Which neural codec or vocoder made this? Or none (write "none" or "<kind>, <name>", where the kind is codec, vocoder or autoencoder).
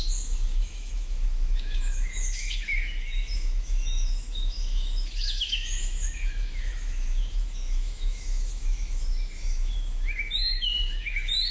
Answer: autoencoder, DAC-VAE